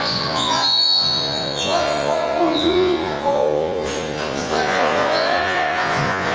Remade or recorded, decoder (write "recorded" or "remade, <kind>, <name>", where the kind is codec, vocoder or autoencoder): remade, vocoder, Vocos